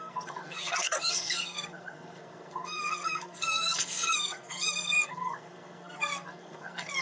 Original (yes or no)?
no